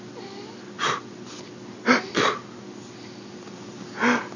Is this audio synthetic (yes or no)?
no